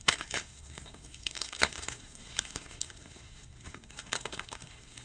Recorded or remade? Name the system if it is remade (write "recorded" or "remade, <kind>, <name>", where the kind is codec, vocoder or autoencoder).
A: remade, codec, SNAC